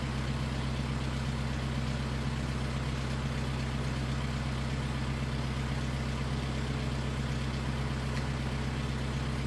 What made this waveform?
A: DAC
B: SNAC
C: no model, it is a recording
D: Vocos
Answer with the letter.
C